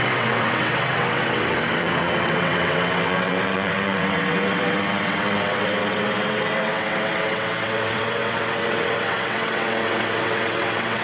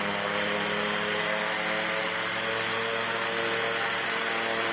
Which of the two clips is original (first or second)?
second